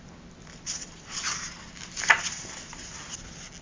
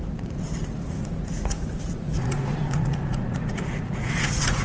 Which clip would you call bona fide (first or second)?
first